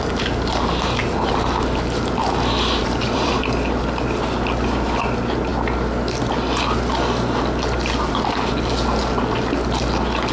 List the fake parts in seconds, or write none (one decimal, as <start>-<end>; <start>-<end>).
2.8-3.3